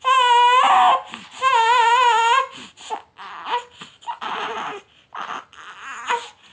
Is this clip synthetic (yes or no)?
no